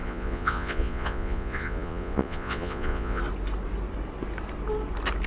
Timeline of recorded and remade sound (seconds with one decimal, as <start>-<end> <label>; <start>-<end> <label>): 0.0-3.2 remade; 3.2-5.3 recorded